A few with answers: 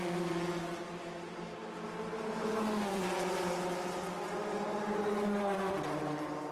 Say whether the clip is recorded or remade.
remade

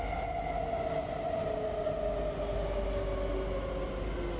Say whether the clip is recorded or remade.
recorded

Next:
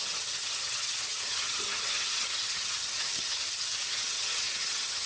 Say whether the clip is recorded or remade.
remade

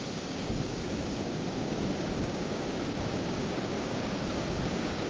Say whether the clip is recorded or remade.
remade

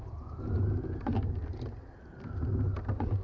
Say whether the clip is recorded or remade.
recorded